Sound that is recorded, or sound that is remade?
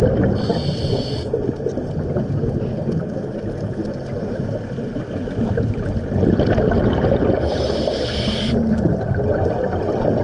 recorded